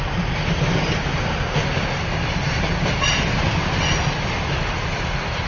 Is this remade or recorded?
recorded